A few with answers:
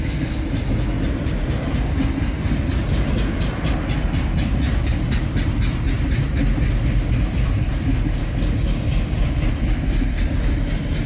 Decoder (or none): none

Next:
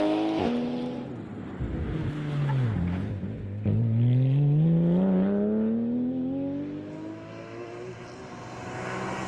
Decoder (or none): none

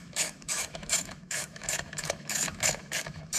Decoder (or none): autoencoder, DAC-VAE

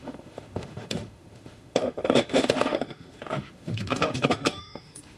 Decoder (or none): autoencoder, DAC-VAE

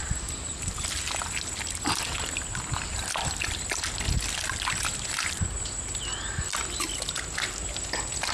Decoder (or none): none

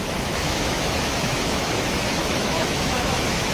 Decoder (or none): autoencoder, DAC-VAE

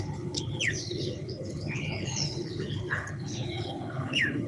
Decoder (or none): codec, HILCodec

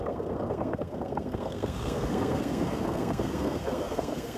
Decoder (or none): codec, SNAC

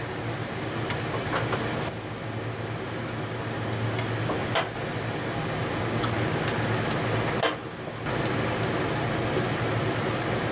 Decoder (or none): none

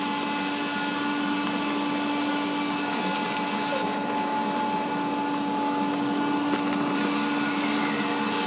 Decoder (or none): none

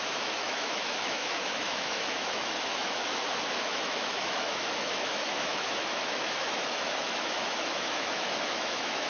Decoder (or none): autoencoder, DAC-VAE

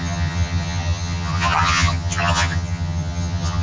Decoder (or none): vocoder, HiFi-GAN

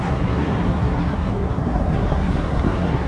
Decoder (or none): codec, SNAC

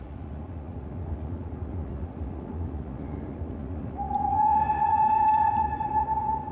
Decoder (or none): vocoder, Vocos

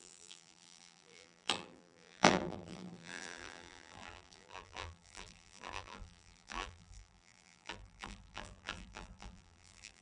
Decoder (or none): vocoder, BigVGAN v2